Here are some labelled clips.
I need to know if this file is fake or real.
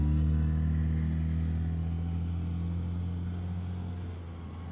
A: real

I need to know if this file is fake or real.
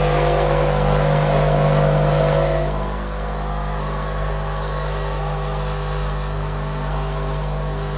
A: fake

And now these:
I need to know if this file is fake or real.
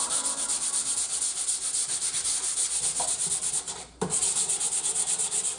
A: real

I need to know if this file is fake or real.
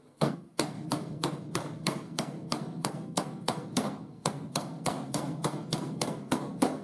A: fake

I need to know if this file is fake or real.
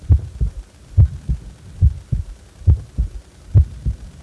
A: real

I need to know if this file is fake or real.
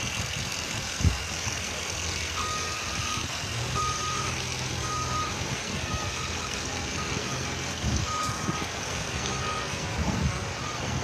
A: fake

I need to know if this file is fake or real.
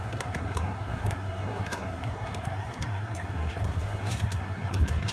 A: fake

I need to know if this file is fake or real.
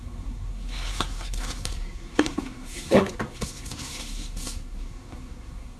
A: fake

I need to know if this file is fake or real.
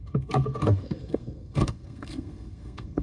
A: fake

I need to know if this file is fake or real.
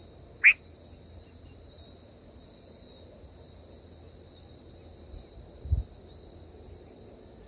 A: real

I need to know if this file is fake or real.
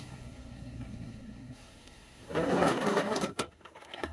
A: fake